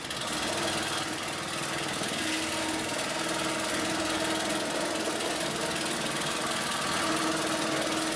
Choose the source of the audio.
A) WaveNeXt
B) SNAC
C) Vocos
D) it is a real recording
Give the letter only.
D